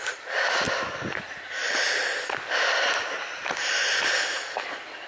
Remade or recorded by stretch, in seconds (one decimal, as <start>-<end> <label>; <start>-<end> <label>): 0.0-5.1 recorded